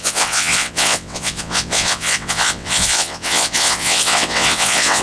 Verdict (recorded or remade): remade